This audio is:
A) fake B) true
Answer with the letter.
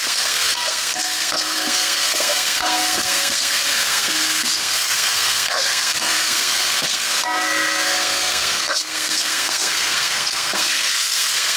A